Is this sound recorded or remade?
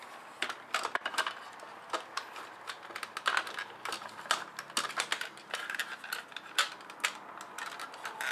recorded